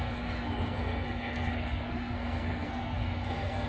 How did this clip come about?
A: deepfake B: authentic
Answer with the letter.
A